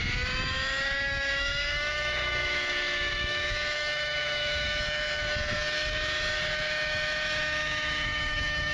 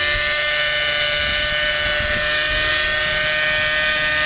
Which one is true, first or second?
second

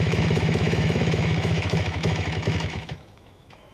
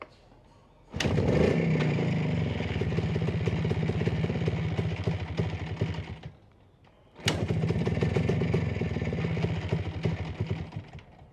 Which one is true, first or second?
second